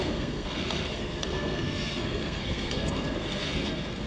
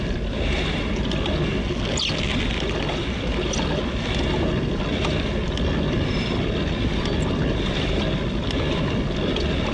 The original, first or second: second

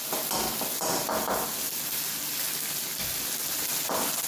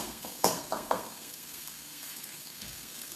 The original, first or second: first